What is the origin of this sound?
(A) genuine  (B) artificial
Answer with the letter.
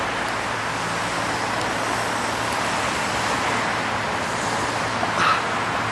A